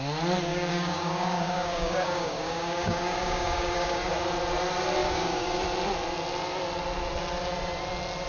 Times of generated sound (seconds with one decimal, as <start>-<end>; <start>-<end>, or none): 0.5-4.1; 5.0-5.6